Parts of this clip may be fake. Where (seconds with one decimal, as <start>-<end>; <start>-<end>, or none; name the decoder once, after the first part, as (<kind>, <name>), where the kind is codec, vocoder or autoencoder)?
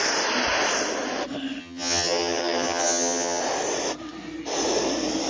1.6-3.4 (vocoder, HiFi-GAN)